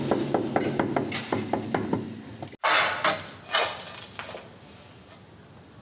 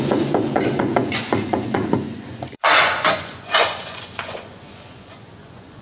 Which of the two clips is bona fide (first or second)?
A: first